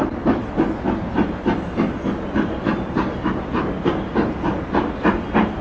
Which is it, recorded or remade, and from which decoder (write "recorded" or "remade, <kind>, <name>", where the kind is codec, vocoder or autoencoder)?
recorded